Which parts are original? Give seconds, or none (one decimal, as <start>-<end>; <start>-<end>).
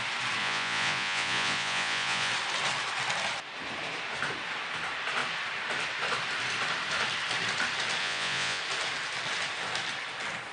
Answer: 0.0-0.4; 2.3-8.0; 8.6-10.5